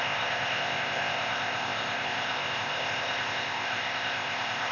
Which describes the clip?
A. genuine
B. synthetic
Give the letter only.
B